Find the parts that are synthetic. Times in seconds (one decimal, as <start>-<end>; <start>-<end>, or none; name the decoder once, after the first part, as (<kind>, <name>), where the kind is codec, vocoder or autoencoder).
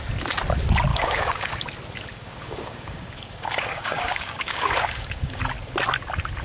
0.9-1.5 (codec, DAC); 2.1-5.4